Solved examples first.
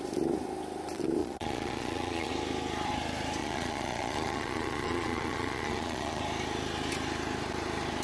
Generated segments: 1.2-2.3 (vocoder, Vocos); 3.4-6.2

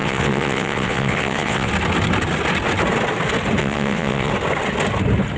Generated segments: 0.0-1.7 (vocoder, WaveNeXt); 3.6-4.3

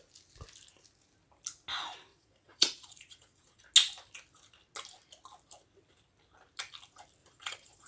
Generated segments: 2.1-3.6 (vocoder, Vocos); 7.2-7.9

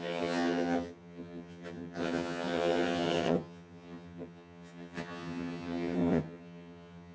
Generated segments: 0.0-7.1 (vocoder, HiFi-GAN)

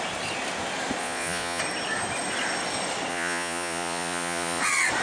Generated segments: 1.0-1.6 (vocoder, Vocos); 3.1-4.6

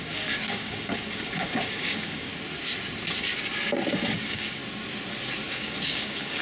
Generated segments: 0.0-2.3 (codec, DAC); 3.9-4.6; 5.5-6.4